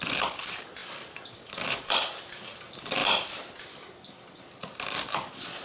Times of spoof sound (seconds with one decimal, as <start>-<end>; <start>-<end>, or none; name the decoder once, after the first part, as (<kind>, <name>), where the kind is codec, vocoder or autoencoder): 0.8-2.0 (vocoder, BigVGAN v2)